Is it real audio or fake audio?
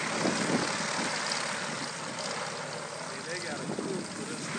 real